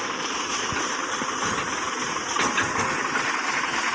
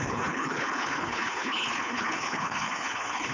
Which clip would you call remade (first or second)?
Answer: second